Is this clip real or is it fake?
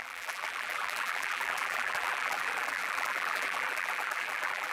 fake